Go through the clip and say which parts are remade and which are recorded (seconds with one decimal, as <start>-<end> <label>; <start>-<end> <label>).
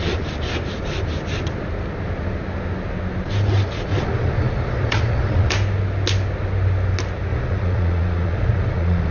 0.0-3.9 recorded; 3.9-5.5 remade; 5.5-7.3 recorded; 7.3-9.1 remade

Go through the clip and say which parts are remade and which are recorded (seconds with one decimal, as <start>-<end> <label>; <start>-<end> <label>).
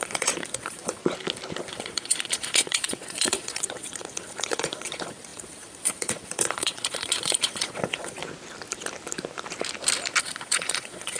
0.0-1.0 remade; 1.0-1.6 recorded; 1.6-8.2 remade; 8.2-10.2 recorded; 10.2-11.2 remade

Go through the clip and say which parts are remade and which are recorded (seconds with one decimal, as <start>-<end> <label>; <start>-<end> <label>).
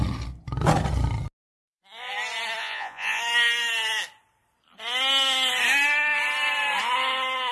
0.0-2.6 recorded; 2.6-3.2 remade; 3.2-7.5 recorded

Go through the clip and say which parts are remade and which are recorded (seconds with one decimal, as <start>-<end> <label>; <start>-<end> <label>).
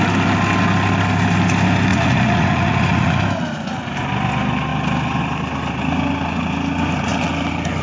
0.0-1.9 recorded; 1.9-3.2 remade; 3.2-7.8 recorded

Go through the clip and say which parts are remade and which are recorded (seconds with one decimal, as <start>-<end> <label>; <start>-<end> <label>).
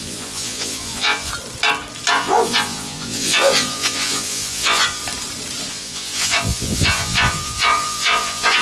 0.0-1.3 remade; 1.3-2.1 recorded; 2.1-5.0 remade; 5.0-5.7 recorded; 5.7-8.6 remade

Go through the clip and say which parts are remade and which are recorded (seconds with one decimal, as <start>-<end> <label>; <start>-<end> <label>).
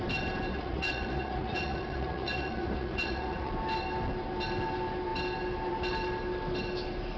0.0-0.5 recorded; 0.5-3.5 remade; 3.5-7.2 recorded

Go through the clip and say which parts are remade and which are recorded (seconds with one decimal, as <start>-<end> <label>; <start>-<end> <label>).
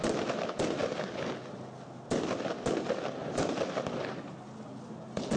0.0-5.4 recorded